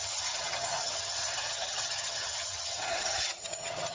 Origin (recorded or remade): remade